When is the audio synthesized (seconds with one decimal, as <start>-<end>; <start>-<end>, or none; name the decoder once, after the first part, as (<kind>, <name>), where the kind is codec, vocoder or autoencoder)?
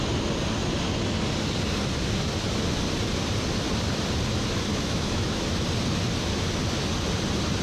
4.7-5.5 (autoencoder, DAC-VAE)